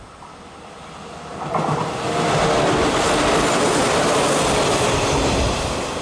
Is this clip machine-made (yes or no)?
no